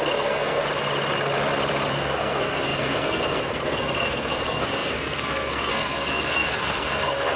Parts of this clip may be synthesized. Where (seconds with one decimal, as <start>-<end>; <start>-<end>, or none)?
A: 0.0-0.6; 1.9-7.4